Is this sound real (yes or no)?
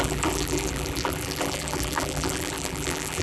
no